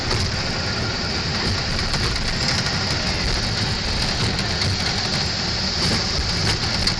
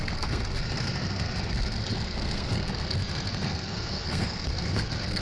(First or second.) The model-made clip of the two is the second